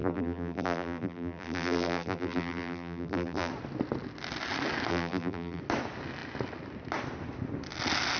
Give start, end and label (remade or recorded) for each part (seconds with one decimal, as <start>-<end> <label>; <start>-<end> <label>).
0.0-3.5 remade; 3.5-4.9 recorded; 4.9-5.6 remade; 5.6-8.2 recorded